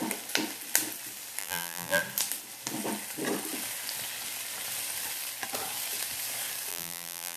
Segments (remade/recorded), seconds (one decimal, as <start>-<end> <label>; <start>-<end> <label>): 0.0-1.4 recorded; 1.4-2.0 remade; 2.0-6.7 recorded; 6.7-7.4 remade